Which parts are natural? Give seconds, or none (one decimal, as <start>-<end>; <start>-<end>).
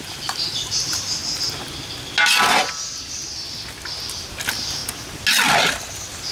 1.2-2.7; 4.8-6.3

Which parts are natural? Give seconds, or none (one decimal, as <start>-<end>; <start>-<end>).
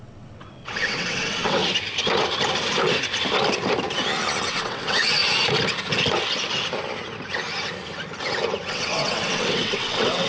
1.6-4.5; 5.2-8.7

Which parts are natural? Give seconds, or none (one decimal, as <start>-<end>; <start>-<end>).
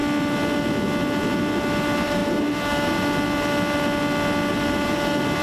0.0-5.4